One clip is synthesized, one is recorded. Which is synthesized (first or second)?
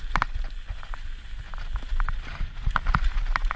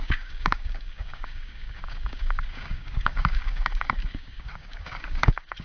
second